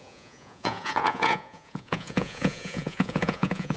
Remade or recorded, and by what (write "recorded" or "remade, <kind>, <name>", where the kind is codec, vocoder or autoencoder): remade, vocoder, Vocos